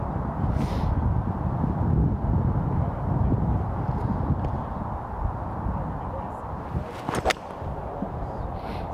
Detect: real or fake real